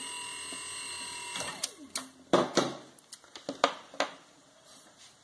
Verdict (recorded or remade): recorded